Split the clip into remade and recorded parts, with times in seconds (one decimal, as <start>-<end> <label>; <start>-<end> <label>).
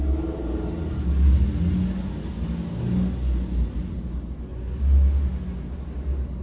0.0-6.4 recorded